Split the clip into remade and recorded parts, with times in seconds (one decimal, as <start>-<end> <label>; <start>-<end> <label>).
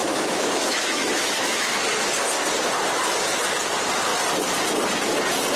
0.0-1.8 remade; 1.8-5.6 recorded